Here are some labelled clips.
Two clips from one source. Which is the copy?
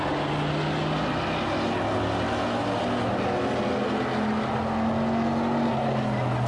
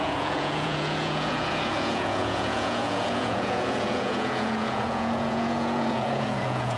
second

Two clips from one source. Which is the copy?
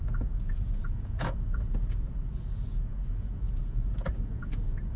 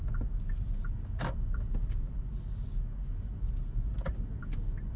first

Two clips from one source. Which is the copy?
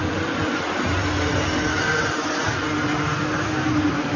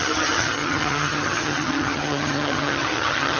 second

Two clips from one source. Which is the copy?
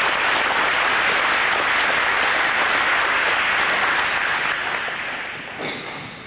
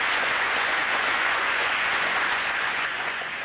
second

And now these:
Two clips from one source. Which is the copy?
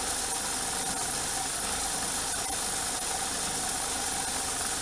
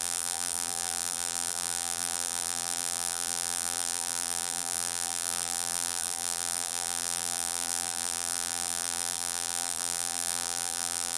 second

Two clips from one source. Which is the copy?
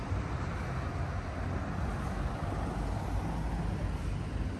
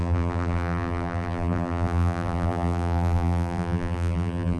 second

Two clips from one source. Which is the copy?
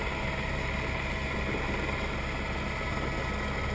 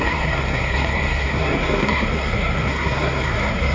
second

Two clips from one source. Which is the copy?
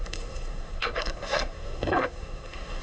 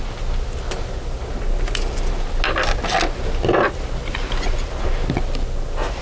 first